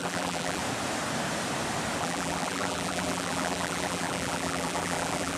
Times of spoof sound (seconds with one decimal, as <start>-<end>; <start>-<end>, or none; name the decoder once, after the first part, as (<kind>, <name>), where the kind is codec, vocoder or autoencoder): 0.0-0.6 (vocoder, BigVGAN v2); 2.0-5.4